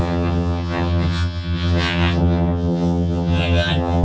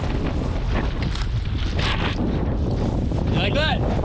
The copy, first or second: first